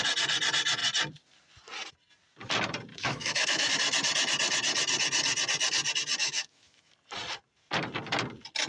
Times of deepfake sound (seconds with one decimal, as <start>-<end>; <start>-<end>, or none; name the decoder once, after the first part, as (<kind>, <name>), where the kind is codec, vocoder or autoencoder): 2.9-3.7 (autoencoder, DAC-VAE); 6.2-6.9